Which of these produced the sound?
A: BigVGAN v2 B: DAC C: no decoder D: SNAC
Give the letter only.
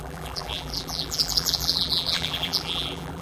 A